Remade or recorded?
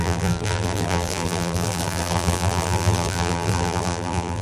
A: remade